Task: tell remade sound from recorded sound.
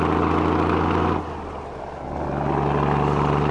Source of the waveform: recorded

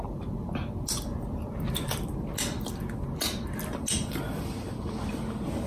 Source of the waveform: recorded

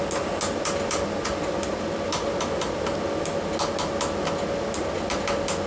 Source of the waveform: recorded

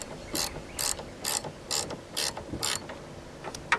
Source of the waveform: recorded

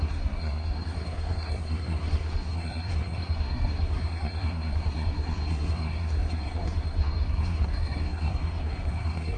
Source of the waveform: remade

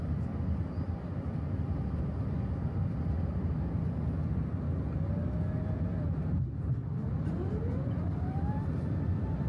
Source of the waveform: recorded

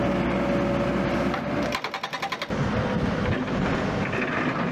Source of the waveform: recorded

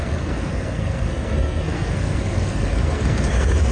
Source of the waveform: remade